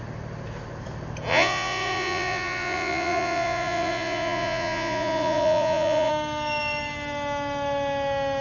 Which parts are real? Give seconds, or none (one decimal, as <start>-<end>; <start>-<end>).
0.0-1.3; 6.1-8.4